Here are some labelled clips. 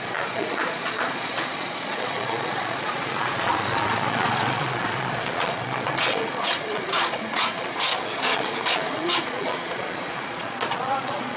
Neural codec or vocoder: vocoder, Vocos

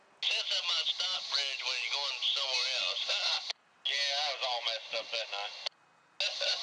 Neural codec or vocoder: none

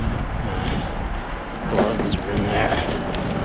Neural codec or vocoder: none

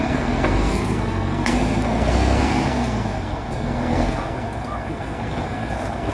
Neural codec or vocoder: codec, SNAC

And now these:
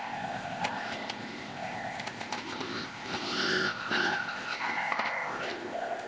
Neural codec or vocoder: codec, ZipCodec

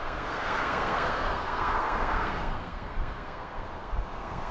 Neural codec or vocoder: codec, SNAC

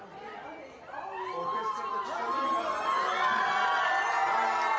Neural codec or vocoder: none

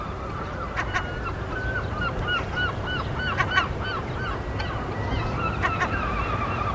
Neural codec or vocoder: none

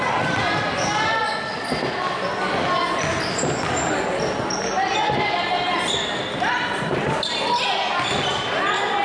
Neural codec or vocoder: none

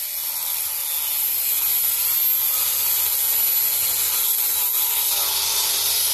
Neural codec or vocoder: none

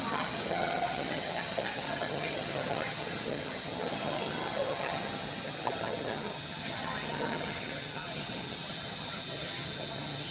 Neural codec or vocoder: vocoder, HiFi-GAN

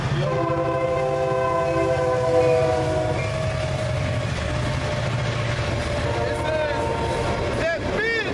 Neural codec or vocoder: none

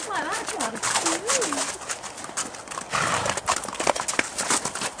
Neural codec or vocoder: none